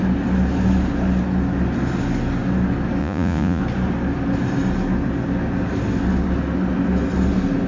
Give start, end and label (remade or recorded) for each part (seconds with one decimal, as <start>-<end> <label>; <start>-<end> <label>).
0.0-3.0 recorded; 3.0-3.6 remade; 3.6-7.7 recorded